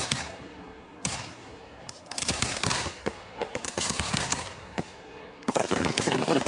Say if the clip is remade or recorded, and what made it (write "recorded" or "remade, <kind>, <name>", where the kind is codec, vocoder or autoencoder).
remade, codec, SNAC